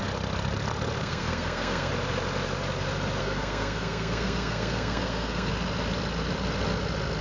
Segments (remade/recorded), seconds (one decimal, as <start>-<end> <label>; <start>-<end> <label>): 0.0-1.0 recorded; 1.0-1.9 remade; 1.9-3.2 recorded; 3.2-5.5 remade; 5.5-7.2 recorded